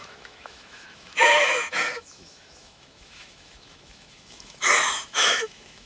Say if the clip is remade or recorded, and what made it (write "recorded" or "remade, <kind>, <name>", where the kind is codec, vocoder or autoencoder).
remade, autoencoder, DAC-VAE